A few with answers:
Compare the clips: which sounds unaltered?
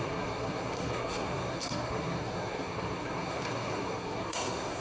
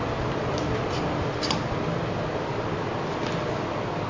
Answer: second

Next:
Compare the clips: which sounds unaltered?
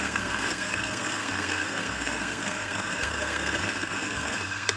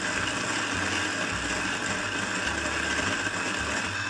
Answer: second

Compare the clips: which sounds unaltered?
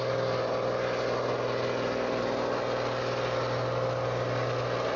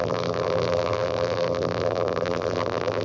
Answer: first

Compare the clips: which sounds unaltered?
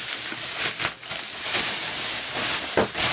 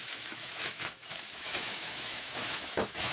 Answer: first